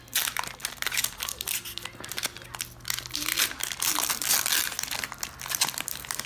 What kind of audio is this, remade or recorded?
recorded